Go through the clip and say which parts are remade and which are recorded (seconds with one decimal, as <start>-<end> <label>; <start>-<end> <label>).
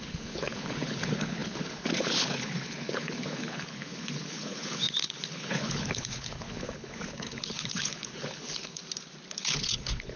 0.0-8.8 remade; 8.8-9.3 recorded; 9.3-10.2 remade